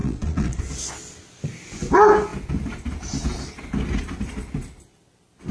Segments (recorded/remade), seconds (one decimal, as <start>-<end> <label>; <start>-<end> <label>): 0.0-0.6 remade; 0.6-5.5 recorded